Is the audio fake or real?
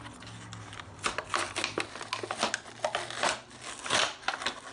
real